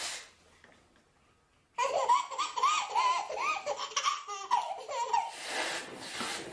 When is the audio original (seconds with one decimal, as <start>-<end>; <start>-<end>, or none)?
0.0-6.5